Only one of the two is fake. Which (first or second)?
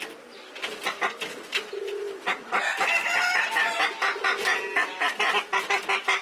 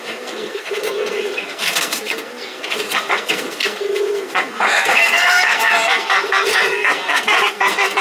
second